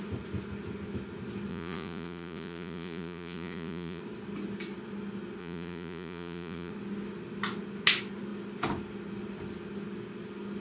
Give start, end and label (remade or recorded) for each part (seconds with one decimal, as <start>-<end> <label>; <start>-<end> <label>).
0.0-1.5 recorded; 1.5-4.0 remade; 4.0-5.4 recorded; 5.4-6.7 remade; 6.7-10.6 recorded